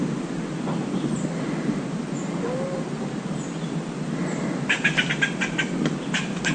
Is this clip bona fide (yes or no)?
yes